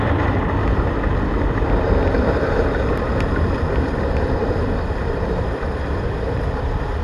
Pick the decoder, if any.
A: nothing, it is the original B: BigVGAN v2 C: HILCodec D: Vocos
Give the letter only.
B